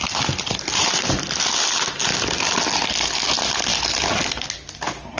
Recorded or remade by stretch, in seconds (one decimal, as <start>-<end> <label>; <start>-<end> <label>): 0.0-5.2 recorded